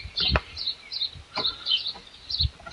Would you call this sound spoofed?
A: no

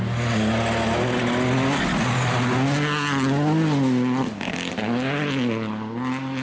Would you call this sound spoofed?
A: no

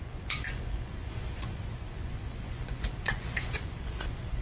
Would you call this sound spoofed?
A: yes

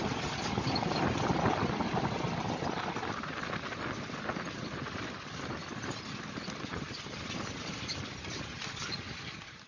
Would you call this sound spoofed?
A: no